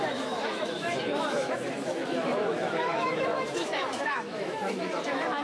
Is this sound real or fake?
fake